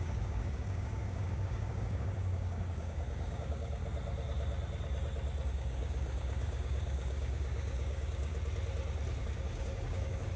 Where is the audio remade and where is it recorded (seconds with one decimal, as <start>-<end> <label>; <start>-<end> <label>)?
0.0-3.8 remade; 3.8-5.5 recorded; 5.5-8.3 remade; 8.3-9.2 recorded; 9.2-10.4 remade

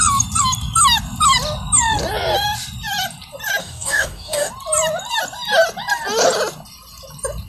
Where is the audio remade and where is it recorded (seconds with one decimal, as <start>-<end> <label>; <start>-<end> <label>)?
0.0-3.6 recorded; 3.6-4.5 remade; 4.5-7.5 recorded